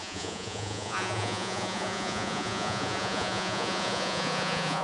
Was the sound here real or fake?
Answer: fake